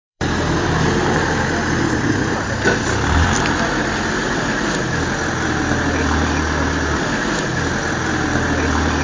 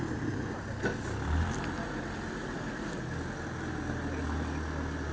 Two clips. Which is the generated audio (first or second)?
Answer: first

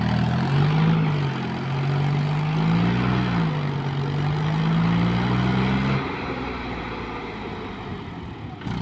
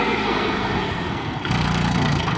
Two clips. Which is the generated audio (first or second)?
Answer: second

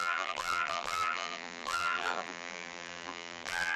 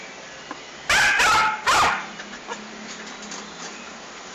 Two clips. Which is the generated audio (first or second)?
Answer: first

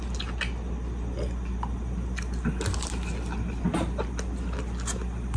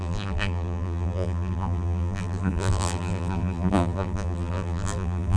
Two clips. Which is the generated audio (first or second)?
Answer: second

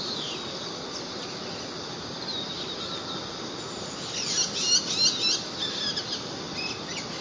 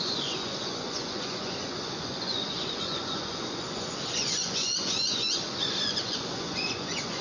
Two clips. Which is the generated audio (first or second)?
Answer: second